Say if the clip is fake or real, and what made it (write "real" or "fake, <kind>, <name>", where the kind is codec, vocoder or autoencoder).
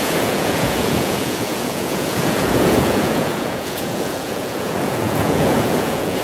fake, vocoder, Vocos